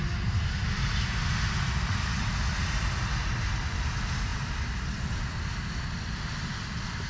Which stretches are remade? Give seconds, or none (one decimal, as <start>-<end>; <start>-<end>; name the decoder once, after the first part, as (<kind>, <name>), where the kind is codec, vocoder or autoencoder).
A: none